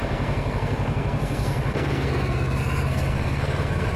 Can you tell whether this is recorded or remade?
remade